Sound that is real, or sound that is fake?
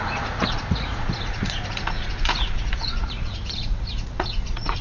fake